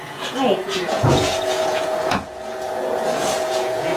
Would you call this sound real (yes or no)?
no